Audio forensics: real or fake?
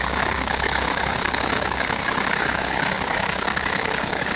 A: fake